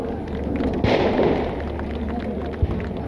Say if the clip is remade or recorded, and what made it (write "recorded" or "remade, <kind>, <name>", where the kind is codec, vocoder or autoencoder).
recorded